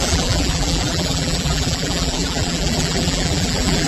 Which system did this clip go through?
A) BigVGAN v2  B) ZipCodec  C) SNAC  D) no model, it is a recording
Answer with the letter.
A